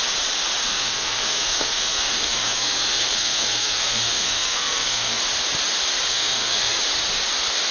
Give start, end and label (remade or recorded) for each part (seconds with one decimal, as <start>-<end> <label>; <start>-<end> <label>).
0.0-0.6 recorded; 0.6-5.2 remade; 5.2-6.1 recorded; 6.1-6.8 remade; 6.8-7.7 recorded